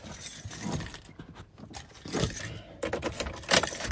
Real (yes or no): yes